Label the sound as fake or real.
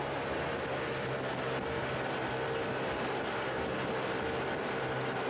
real